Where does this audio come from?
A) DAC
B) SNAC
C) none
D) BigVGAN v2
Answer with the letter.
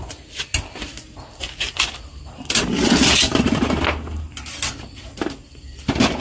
C